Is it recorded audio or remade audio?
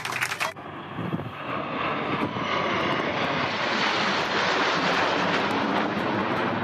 recorded